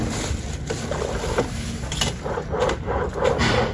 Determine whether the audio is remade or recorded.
recorded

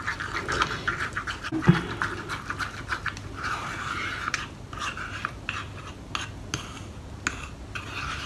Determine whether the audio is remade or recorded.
recorded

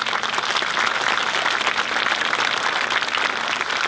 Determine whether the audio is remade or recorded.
recorded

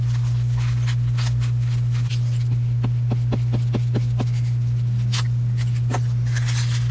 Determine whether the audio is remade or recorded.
recorded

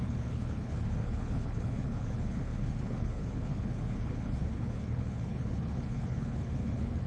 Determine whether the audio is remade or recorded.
remade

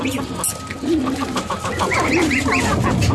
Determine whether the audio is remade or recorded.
recorded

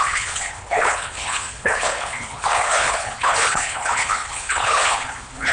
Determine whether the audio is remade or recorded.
remade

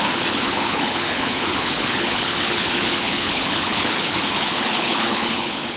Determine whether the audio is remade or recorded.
remade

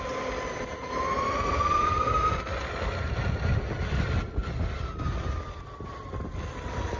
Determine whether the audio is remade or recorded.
recorded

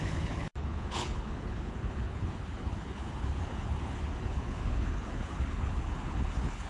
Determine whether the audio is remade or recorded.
remade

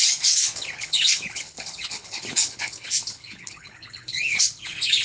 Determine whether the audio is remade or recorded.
remade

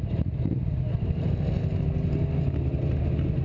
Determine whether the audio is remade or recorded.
recorded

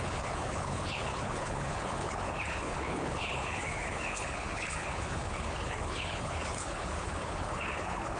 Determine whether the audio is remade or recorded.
remade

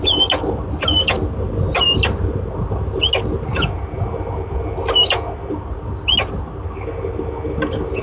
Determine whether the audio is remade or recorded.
recorded